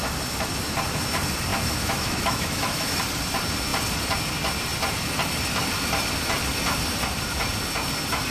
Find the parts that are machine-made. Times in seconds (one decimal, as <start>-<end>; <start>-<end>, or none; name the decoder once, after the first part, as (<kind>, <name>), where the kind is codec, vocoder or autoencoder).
1.5-3.0 (autoencoder, DAC-VAE)